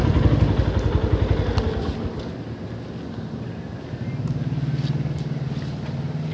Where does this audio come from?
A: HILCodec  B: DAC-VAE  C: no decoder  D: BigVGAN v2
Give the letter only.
C